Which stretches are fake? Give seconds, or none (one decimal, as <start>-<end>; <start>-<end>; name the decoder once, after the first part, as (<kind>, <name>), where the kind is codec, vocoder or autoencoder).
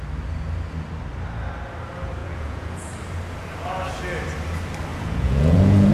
2.2-2.9 (vocoder, Vocos); 4.9-5.9